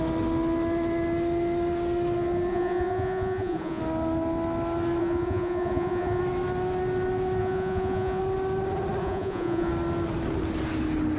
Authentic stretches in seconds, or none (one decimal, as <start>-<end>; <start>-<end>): 0.0-2.5; 3.8-5.0; 6.2-7.4; 8.2-9.0; 9.7-11.2